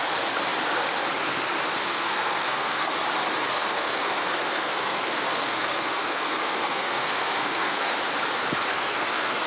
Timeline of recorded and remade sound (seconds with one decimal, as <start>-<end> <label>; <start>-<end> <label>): 0.0-1.9 recorded; 1.9-2.9 remade; 2.9-3.4 recorded; 3.4-7.9 remade; 7.9-8.7 recorded; 8.7-9.5 remade